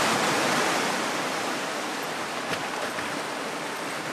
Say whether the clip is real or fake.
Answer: real